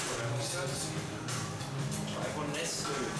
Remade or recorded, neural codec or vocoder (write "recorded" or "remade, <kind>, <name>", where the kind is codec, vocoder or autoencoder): recorded